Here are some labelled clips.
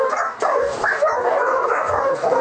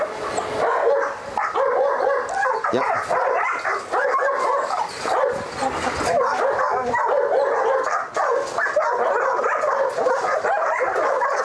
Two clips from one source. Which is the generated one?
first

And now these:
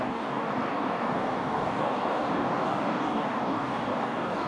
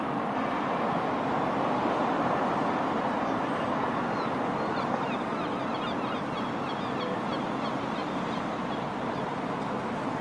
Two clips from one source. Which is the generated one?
first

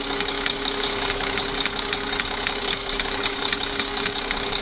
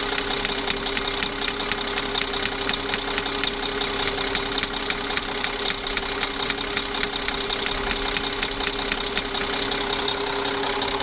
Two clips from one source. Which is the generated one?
first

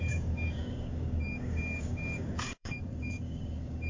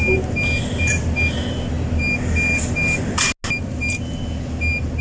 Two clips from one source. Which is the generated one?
first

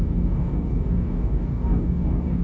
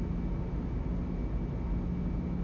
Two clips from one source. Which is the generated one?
first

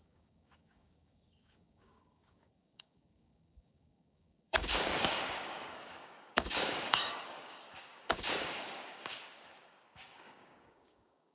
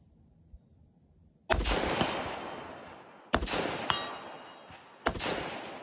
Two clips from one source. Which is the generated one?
first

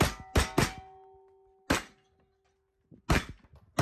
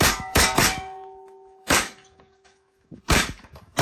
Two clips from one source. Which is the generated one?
second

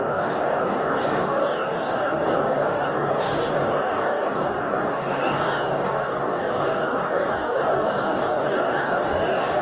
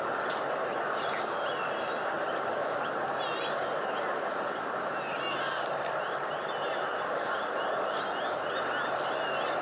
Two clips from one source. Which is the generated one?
first